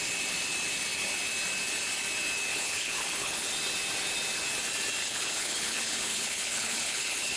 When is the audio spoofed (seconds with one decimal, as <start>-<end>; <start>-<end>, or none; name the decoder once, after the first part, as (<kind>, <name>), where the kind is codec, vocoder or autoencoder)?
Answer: 2.5-3.5 (codec, HILCodec); 5.0-7.4